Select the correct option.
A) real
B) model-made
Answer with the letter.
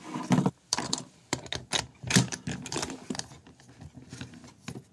A